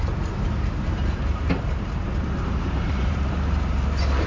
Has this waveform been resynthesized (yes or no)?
yes